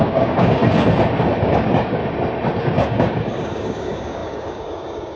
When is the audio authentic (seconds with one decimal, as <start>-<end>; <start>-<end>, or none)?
0.6-1.4; 2.0-2.6